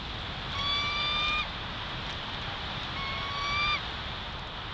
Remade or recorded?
recorded